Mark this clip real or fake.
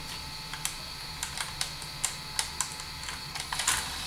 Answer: real